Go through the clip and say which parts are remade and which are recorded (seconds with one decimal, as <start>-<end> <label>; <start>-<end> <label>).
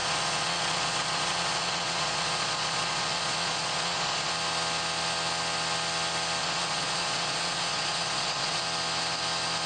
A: 0.0-4.3 remade; 4.3-6.4 recorded; 6.4-8.6 remade; 8.6-9.7 recorded